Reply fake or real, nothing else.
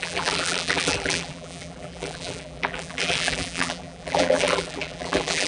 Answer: fake